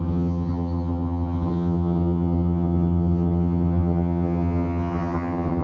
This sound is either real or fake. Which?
fake